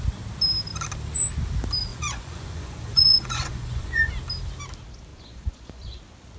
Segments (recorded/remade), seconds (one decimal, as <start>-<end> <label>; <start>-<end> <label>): 0.0-1.9 recorded; 1.9-4.1 remade; 4.1-5.1 recorded; 5.1-6.0 remade; 6.0-6.4 recorded